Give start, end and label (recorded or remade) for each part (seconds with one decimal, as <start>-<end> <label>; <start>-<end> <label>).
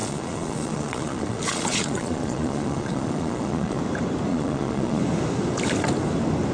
0.0-3.8 remade; 3.8-4.3 recorded; 4.3-5.0 remade; 5.0-6.5 recorded